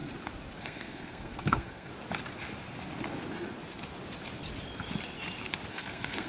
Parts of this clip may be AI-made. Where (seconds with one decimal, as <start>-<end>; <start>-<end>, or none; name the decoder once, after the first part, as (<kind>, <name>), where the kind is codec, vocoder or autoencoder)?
0.6-1.9 (codec, SNAC); 5.7-6.3